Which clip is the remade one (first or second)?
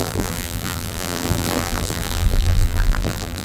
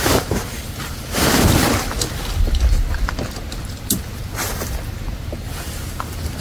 first